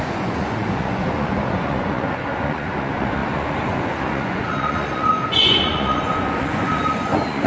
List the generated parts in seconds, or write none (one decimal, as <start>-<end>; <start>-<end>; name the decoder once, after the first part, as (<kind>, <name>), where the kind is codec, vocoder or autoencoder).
0.0-7.5 (vocoder, Vocos)